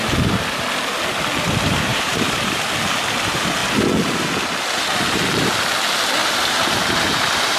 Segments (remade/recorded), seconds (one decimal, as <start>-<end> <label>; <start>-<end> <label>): 0.0-1.9 recorded; 1.9-2.6 remade; 2.6-6.2 recorded; 6.2-7.6 remade